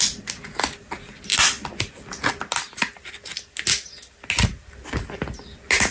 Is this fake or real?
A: real